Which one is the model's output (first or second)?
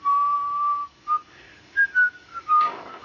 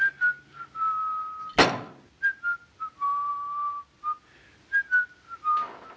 first